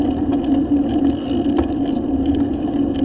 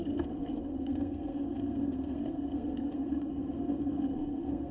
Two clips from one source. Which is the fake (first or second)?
second